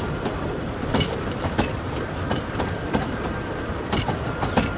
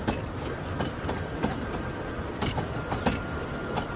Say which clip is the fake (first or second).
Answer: first